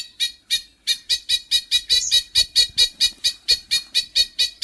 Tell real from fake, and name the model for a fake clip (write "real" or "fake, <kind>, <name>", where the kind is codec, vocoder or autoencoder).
fake, vocoder, BigVGAN v2